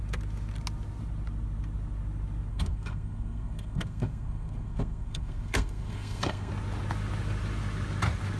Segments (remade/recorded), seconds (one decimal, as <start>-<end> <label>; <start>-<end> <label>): 0.0-2.5 recorded; 2.5-6.5 remade; 6.5-8.4 recorded